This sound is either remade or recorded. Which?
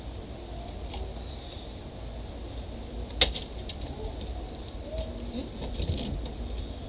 recorded